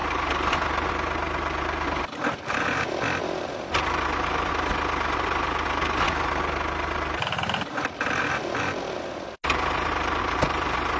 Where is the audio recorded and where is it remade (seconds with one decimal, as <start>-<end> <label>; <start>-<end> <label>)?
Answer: 0.0-11.0 recorded

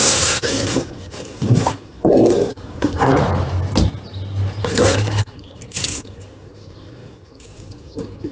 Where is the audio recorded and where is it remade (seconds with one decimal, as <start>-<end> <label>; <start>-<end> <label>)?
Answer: 0.0-3.2 remade; 3.2-4.6 recorded; 4.6-8.3 remade

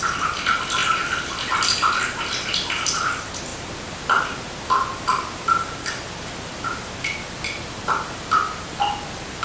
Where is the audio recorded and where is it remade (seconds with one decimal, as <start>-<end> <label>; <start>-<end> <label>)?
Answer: 0.0-9.4 recorded

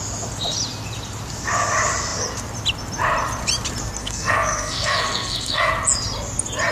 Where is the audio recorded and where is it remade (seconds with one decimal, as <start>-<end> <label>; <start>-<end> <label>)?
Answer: 0.0-4.0 recorded; 4.0-5.7 remade; 5.7-6.7 recorded

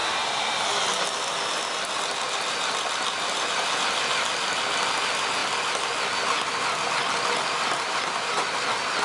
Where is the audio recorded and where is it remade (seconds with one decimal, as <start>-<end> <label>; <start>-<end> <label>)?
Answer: 0.0-9.0 recorded

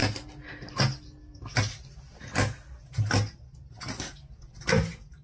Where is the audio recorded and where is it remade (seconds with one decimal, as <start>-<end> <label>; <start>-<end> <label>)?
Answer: 0.0-5.2 recorded

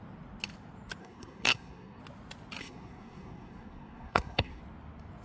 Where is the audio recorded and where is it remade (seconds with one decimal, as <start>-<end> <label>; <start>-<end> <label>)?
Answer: 0.0-1.0 recorded; 1.0-2.0 remade; 2.0-2.6 recorded; 2.6-4.6 remade; 4.6-5.2 recorded